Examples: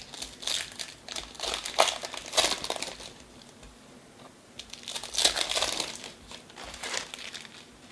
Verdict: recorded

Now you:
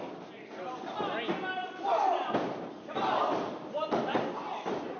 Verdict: recorded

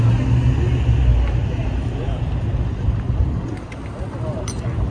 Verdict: recorded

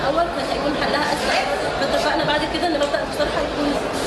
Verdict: recorded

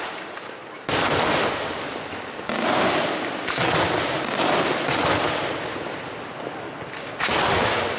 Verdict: recorded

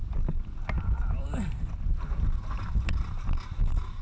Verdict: recorded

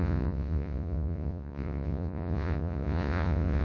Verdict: remade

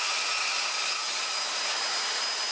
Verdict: recorded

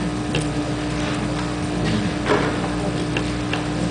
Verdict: recorded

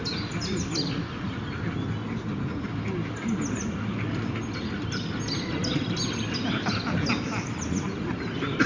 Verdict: recorded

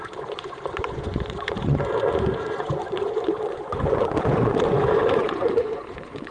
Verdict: remade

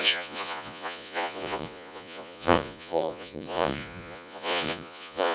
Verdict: remade